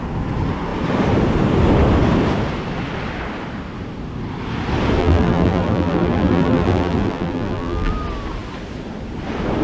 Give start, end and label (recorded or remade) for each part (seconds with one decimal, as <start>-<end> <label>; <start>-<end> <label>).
0.0-5.0 recorded; 5.0-7.9 remade; 7.9-9.6 recorded